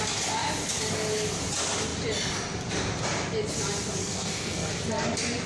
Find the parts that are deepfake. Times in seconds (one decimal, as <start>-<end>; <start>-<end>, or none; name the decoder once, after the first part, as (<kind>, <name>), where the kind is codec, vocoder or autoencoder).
4.0-4.7 (codec, SNAC)